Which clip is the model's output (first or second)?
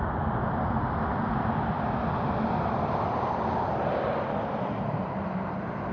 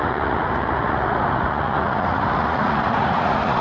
second